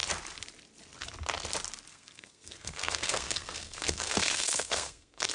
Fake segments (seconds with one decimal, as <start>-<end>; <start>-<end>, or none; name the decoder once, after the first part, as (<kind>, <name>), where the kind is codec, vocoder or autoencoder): 1.9-5.3 (codec, SNAC)

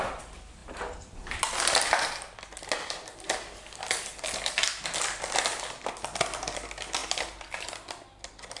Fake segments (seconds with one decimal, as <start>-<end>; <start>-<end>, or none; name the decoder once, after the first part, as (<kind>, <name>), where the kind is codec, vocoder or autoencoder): none